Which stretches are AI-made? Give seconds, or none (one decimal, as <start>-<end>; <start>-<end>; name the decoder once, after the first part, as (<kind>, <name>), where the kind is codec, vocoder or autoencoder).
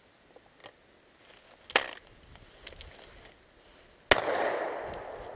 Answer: none